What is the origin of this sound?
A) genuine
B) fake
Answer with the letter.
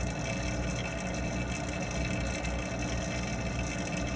A